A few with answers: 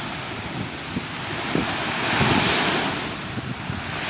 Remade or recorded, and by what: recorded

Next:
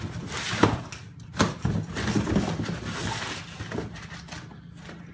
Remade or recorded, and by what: recorded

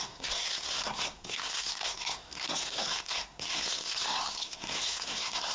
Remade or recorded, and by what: remade, codec, SNAC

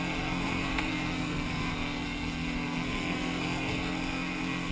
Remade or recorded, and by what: remade, codec, SNAC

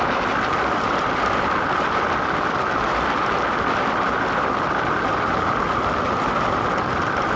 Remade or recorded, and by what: recorded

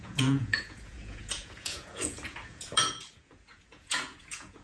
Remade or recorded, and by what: remade, vocoder, Vocos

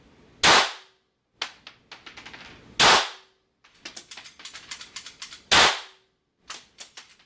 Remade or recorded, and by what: recorded